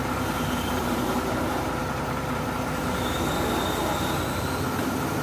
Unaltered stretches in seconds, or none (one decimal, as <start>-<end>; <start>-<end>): 0.0-1.8; 2.8-5.2

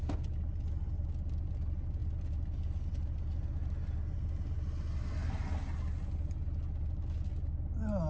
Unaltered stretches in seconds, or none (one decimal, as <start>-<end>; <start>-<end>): 0.0-8.1

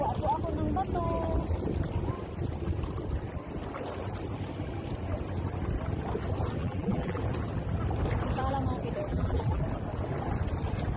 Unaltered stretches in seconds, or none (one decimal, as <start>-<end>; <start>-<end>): 0.0-6.6; 7.2-9.1; 9.6-11.0

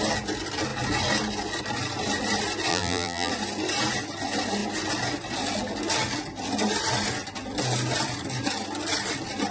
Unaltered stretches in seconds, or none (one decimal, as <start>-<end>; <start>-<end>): 0.0-2.7; 3.3-9.5